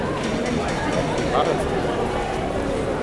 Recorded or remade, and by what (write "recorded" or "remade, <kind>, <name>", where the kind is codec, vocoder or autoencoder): recorded